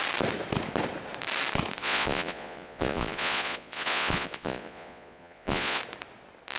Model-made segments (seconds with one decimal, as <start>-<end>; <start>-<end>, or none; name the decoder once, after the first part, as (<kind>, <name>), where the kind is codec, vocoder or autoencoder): 1.8-5.8 (vocoder, Vocos)

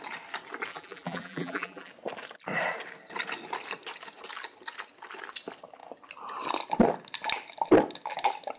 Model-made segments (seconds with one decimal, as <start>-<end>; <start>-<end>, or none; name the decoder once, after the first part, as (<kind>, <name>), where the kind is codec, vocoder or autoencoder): 0.7-1.9 (vocoder, BigVGAN v2)

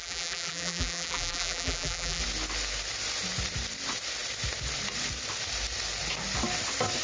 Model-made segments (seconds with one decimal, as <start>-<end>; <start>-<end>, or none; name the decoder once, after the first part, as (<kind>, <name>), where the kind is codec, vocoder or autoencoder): 0.0-2.2 (vocoder, BigVGAN v2)

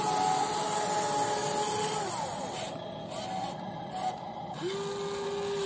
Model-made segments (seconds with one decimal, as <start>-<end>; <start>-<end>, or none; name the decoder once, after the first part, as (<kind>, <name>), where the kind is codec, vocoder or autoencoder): none

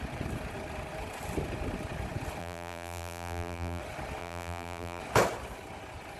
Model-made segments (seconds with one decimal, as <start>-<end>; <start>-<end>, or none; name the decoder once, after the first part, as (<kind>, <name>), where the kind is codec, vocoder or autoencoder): 2.4-3.8 (vocoder, BigVGAN v2); 4.2-5.0

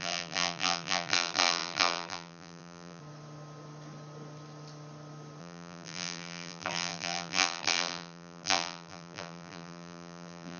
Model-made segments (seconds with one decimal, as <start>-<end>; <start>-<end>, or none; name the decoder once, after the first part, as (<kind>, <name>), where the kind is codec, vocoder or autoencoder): 0.0-3.0 (vocoder, BigVGAN v2); 5.4-10.6

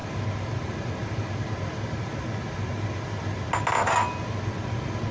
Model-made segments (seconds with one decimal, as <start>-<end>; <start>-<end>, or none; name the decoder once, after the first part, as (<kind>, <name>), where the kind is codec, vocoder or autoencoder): none

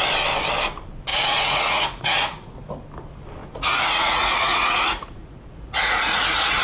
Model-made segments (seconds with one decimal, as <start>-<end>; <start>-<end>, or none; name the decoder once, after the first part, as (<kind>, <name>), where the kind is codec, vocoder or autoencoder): 1.1-2.6 (vocoder, Vocos); 3.4-6.6